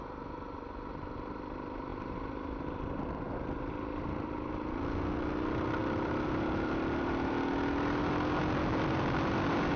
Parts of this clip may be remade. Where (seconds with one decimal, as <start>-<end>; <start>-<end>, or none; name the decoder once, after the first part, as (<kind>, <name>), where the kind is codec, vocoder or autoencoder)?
1.9-4.5 (vocoder, BigVGAN v2); 5.8-8.0